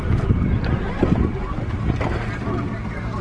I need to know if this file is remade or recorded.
recorded